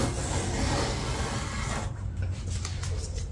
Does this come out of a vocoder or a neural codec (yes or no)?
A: no